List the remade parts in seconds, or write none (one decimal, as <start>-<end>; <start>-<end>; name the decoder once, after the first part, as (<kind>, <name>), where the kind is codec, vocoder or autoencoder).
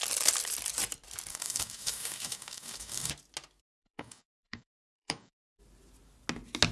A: 1.3-3.1 (codec, DAC); 3.6-5.6